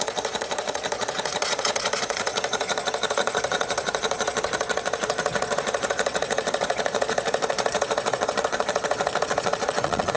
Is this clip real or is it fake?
fake